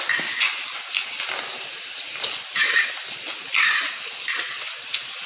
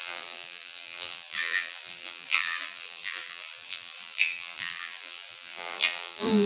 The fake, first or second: second